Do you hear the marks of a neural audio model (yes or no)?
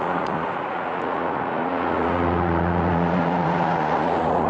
yes